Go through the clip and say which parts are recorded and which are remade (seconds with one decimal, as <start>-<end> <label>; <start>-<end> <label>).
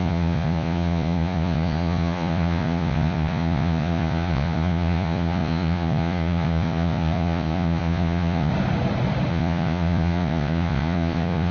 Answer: 0.0-8.5 remade; 8.5-9.3 recorded; 9.3-11.5 remade